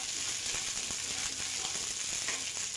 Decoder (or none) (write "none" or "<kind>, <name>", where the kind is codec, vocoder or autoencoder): none